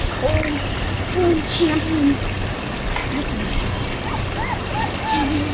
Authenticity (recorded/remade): recorded